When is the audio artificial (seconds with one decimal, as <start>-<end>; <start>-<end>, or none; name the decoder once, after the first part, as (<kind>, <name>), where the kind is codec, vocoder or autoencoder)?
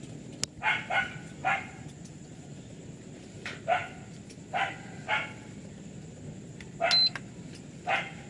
1.4-2.6 (vocoder, Vocos)